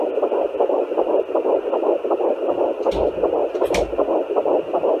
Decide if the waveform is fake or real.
real